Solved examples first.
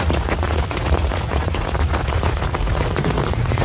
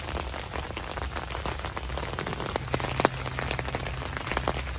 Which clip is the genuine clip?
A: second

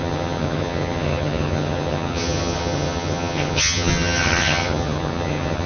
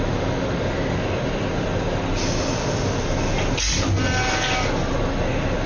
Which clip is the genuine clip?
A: second